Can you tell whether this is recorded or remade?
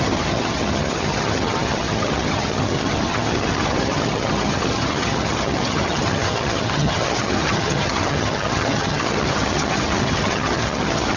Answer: remade